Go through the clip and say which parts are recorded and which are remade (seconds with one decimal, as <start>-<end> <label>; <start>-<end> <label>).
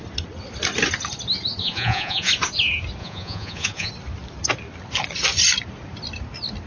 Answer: 0.0-1.6 recorded; 1.6-2.3 remade; 2.3-3.0 recorded; 3.0-3.9 remade; 3.9-6.7 recorded